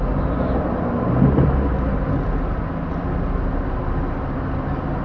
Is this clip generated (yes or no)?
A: no